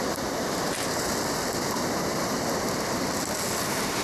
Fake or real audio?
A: real